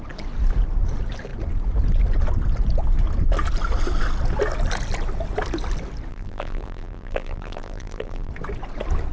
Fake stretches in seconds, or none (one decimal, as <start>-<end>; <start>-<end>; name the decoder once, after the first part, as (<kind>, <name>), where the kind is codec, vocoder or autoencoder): 6.1-8.3 (vocoder, BigVGAN v2)

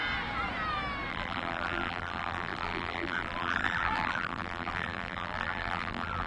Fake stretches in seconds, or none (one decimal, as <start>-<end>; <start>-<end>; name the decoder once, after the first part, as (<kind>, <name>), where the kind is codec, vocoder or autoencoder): 1.1-6.3 (vocoder, BigVGAN v2)

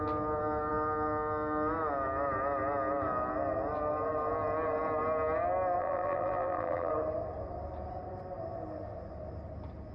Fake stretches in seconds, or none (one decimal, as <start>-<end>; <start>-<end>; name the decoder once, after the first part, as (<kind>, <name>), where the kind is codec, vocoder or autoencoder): 5.8-6.9 (vocoder, BigVGAN v2)

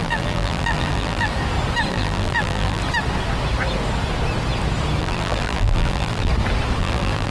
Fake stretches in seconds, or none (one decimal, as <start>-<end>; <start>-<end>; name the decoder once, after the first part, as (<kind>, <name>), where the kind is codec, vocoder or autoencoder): 0.0-1.3 (vocoder, BigVGAN v2); 1.9-2.8; 5.0-6.3; 6.8-7.3

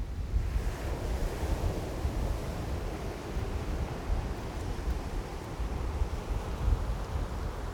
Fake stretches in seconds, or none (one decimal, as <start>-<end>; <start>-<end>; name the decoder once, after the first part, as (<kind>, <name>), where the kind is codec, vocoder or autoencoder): 5.3-5.9 (vocoder, BigVGAN v2)